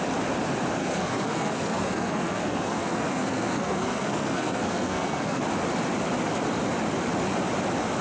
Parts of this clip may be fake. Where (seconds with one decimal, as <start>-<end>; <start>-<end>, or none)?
0.8-5.4